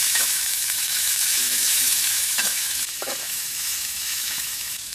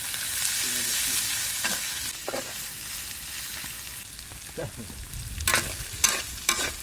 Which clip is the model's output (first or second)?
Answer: first